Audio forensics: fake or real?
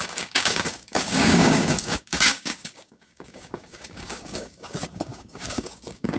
fake